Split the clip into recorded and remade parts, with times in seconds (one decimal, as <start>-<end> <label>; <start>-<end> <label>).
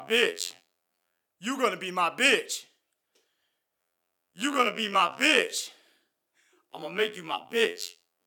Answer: 0.0-1.2 remade; 1.2-3.8 recorded; 3.8-5.5 remade; 5.5-6.7 recorded; 6.7-8.3 remade